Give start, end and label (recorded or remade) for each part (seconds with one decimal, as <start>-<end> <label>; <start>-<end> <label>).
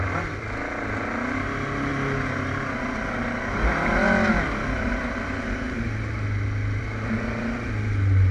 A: 0.0-8.3 recorded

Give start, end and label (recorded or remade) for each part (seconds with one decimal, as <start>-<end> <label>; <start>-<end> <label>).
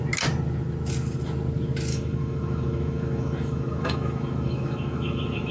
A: 0.0-1.9 recorded; 1.9-5.5 remade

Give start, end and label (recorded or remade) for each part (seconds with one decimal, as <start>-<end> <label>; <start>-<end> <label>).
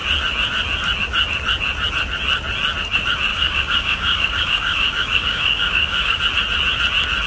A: 0.0-3.3 recorded; 3.3-6.2 remade; 6.2-7.3 recorded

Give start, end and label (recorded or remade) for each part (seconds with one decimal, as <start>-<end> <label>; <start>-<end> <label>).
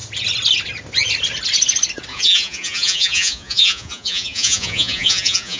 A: 0.0-2.1 recorded; 2.1-5.6 remade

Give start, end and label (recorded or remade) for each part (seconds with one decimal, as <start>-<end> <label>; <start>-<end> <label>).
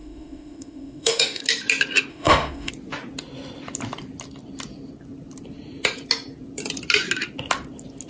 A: 0.0-1.4 remade; 1.4-2.1 recorded; 2.1-2.7 remade; 2.7-8.1 recorded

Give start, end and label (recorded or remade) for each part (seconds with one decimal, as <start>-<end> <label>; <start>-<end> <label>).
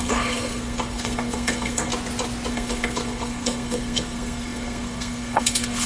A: 0.0-1.9 remade; 1.9-2.5 recorded; 2.5-5.9 remade